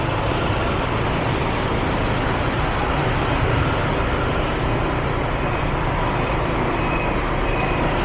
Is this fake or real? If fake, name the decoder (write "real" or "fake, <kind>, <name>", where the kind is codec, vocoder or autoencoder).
real